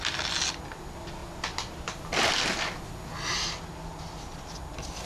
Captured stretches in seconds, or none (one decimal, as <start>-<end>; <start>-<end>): 0.0-5.1